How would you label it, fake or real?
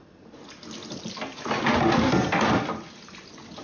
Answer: real